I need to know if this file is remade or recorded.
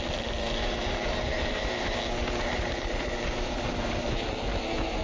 remade